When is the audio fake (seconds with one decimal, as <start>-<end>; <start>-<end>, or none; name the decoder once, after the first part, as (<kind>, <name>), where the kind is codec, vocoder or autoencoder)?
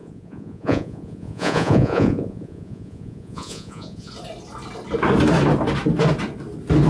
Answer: 0.0-4.1 (vocoder, Vocos)